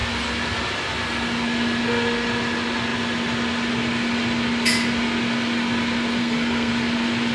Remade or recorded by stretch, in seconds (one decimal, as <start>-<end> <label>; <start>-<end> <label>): 0.0-6.2 recorded; 6.2-6.7 remade; 6.7-7.3 recorded